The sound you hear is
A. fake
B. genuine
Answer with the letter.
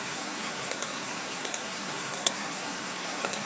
A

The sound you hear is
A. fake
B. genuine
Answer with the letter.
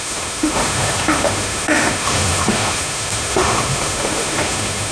A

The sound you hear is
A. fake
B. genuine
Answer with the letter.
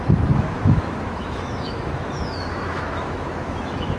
A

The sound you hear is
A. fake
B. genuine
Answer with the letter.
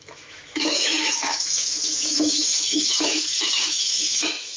A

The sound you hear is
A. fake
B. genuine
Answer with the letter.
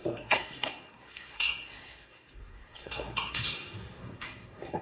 A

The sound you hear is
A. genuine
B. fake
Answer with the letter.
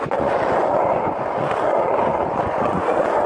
B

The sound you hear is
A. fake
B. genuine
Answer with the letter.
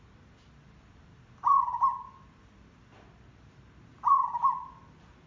B